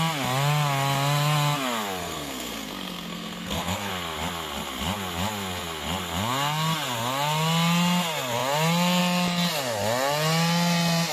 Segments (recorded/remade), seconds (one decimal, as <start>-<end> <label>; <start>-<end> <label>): 0.0-2.0 recorded; 2.0-3.9 remade; 3.9-11.1 recorded